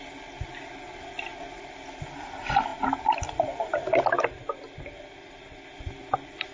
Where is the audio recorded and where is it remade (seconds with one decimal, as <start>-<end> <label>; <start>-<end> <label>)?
0.0-6.5 recorded